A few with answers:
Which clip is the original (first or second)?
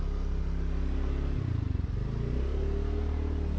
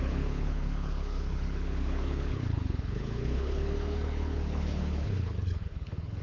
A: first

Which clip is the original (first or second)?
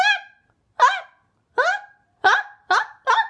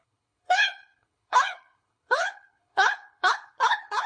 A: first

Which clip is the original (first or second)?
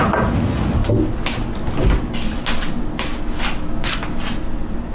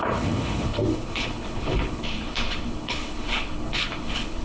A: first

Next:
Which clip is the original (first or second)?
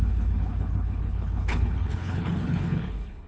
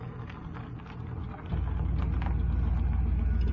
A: second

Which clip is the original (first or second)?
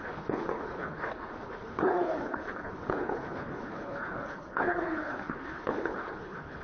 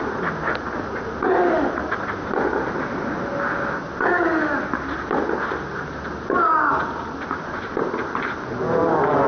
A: second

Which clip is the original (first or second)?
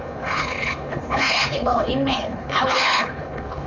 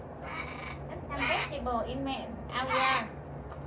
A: second